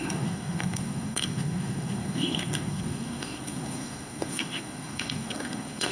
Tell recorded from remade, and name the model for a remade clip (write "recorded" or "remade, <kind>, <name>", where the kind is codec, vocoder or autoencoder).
remade, codec, SNAC